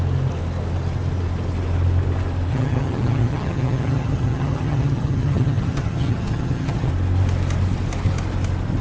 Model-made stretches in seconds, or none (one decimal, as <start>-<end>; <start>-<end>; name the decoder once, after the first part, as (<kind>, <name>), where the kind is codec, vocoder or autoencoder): 2.5-6.9 (vocoder, HiFi-GAN)